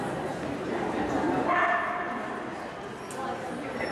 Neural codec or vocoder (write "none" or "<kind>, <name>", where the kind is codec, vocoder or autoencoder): none